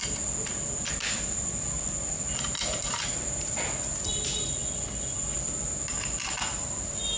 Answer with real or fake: real